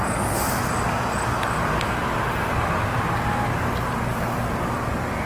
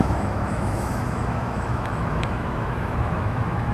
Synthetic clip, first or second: second